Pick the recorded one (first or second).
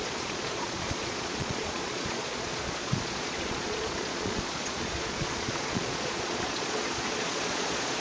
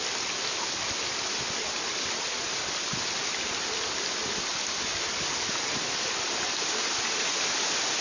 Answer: second